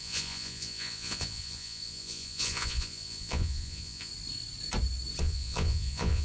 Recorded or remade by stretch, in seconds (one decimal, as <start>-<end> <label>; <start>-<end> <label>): 0.0-4.1 remade; 4.1-5.2 recorded; 5.2-6.2 remade